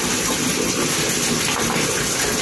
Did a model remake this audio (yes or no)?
no